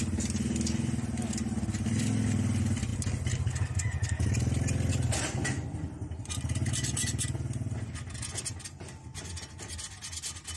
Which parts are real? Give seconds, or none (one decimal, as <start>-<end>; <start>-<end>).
0.0-10.6